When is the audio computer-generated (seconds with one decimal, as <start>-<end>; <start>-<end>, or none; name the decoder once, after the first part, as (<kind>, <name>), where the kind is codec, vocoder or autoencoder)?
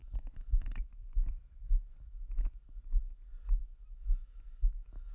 0.0-2.8 (autoencoder, DAC-VAE); 3.6-5.1